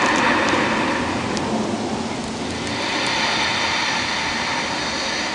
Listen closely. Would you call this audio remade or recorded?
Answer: recorded